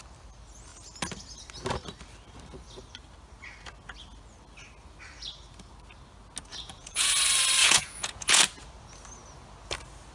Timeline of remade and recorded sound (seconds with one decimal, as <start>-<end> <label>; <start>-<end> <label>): 0.0-6.5 recorded; 6.5-7.1 remade; 7.1-7.6 recorded; 7.6-8.4 remade; 8.4-10.1 recorded